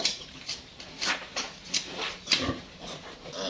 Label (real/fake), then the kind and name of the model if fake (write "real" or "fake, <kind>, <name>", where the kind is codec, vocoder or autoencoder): real